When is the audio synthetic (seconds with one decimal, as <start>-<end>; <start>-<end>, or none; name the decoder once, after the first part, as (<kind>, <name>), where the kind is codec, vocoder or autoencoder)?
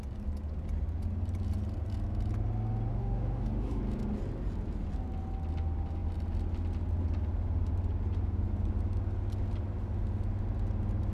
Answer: 2.9-3.8 (autoencoder, DAC-VAE)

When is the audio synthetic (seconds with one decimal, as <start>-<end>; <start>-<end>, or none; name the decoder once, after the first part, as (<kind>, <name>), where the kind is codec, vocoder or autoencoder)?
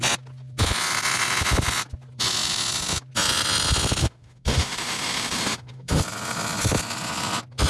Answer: 4.0-6.0 (autoencoder, DAC-VAE)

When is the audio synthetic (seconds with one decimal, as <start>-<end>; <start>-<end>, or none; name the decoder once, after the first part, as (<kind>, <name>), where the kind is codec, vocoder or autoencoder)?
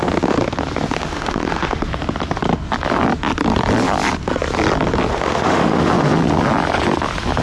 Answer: 1.0-1.8 (autoencoder, DAC-VAE); 5.1-5.9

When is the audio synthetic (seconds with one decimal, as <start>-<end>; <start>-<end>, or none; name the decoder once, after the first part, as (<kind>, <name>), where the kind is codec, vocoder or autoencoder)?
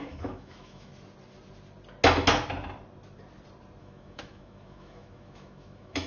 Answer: 0.0-0.9 (autoencoder, DAC-VAE); 3.8-6.1